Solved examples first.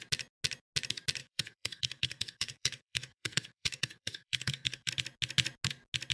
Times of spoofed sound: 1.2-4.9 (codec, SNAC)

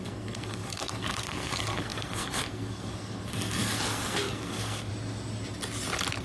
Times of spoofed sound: 0.0-4.9 (codec, SNAC)

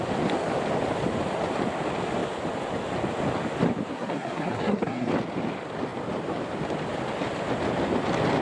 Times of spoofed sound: 3.9-5.1 (codec, SNAC)

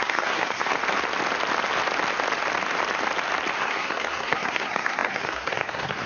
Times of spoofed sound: 0.0-0.7 (codec, SNAC); 3.6-6.1

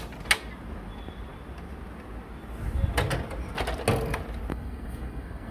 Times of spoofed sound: 4.5-5.5 (codec, SNAC)

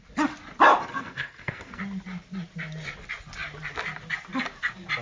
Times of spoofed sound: 0.9-1.8 (codec, SNAC)

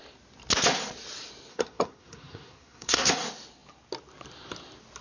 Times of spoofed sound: 1.5-3.1 (codec, SNAC)

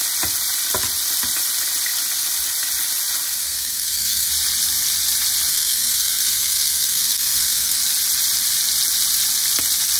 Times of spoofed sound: 3.4-4.3 (codec, SNAC); 5.5-7.8